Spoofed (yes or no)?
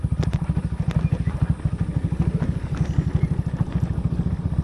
no